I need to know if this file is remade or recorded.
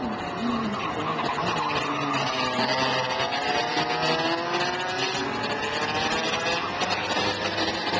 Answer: recorded